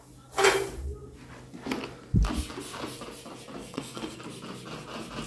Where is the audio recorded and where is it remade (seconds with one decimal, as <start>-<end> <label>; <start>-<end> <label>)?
0.0-3.6 recorded; 3.6-4.2 remade; 4.2-5.3 recorded